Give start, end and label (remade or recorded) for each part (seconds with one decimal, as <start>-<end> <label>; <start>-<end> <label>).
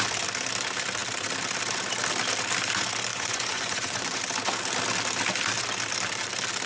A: 0.0-3.1 recorded; 3.1-4.2 remade; 4.2-6.7 recorded